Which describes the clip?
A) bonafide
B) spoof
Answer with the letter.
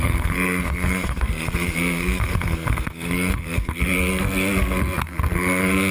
B